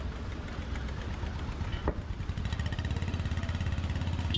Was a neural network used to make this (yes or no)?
no